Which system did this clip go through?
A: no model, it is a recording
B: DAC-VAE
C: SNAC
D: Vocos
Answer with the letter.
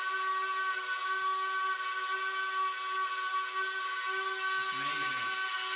A